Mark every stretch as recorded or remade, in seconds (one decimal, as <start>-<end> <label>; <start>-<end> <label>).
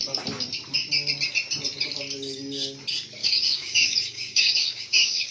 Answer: 0.0-3.2 recorded; 3.2-5.3 remade